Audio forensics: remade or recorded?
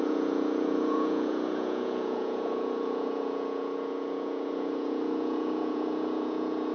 remade